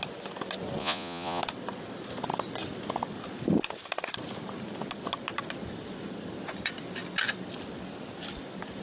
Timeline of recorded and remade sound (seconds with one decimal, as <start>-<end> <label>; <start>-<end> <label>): 0.0-0.8 recorded; 0.8-1.4 remade; 1.4-8.8 recorded

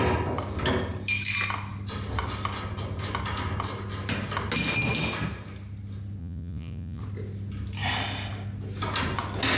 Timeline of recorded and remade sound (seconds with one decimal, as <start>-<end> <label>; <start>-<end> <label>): 0.0-6.2 recorded; 6.2-7.0 remade; 7.0-9.6 recorded

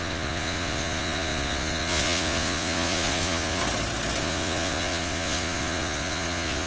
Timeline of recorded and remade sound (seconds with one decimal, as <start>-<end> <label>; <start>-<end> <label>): 0.0-3.6 remade; 3.6-4.2 recorded; 4.2-6.7 remade

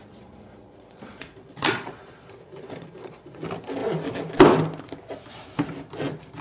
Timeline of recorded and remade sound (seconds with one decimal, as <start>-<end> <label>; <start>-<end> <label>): 0.0-3.4 remade; 3.4-6.4 recorded

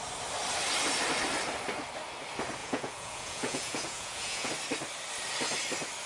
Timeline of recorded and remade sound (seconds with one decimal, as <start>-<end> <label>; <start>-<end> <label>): 0.0-2.6 recorded; 2.6-4.5 remade; 4.5-6.1 recorded

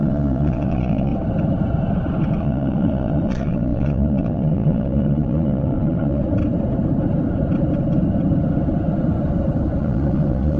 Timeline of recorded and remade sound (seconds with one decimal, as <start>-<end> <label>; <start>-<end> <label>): 0.0-1.1 remade; 1.1-2.4 recorded; 2.4-6.2 remade; 6.2-9.8 recorded; 9.8-10.6 remade